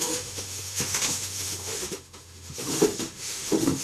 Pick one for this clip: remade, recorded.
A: remade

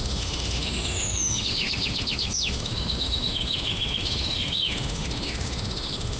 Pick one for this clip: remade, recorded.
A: remade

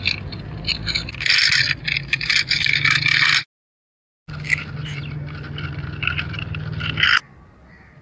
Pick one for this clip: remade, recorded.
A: recorded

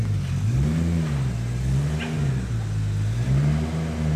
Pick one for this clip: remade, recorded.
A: recorded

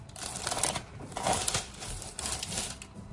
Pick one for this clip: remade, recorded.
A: recorded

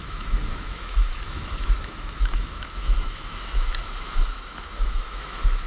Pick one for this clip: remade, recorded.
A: remade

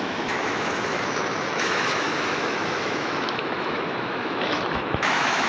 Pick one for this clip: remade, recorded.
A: remade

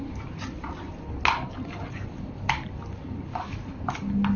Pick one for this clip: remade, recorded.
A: recorded